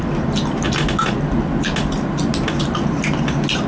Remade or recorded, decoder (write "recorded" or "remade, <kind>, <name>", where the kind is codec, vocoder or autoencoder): recorded